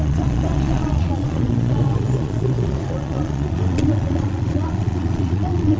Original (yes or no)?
no